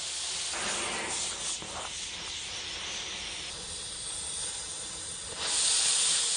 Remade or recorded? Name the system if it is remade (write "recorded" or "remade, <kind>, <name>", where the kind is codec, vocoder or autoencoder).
recorded